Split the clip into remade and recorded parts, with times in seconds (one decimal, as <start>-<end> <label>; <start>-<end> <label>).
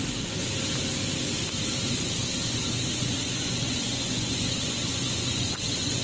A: 0.0-0.4 remade; 0.4-2.0 recorded; 2.0-6.0 remade